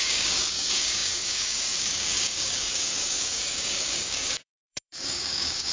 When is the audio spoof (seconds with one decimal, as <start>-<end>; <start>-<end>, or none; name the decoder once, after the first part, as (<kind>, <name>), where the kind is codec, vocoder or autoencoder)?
0.0-5.7 (codec, DAC)